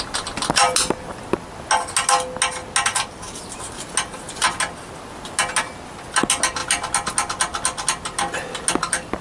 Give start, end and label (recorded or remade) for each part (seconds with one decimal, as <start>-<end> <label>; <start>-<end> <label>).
0.0-9.2 recorded